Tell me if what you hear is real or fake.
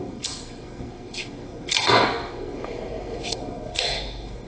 fake